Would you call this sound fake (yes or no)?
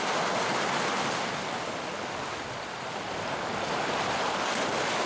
no